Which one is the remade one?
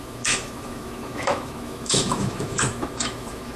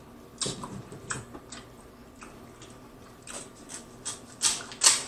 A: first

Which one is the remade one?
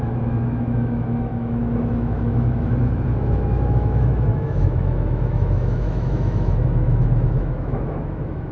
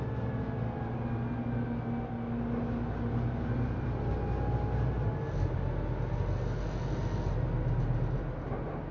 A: first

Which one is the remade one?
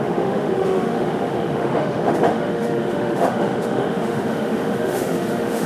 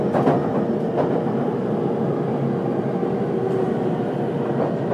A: first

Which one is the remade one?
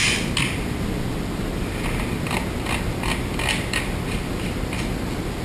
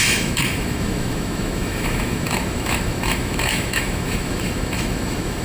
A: second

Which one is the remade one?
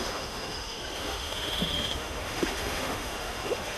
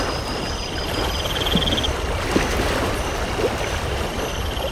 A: first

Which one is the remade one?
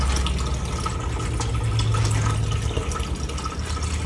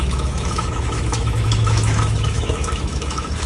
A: second